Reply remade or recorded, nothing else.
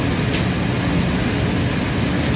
recorded